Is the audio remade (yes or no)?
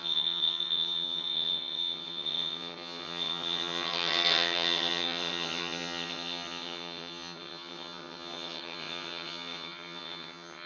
yes